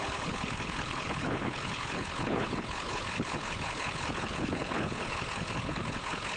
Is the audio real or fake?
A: fake